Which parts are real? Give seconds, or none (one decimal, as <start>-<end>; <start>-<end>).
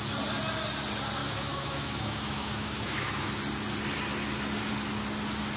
0.0-1.2; 3.3-5.6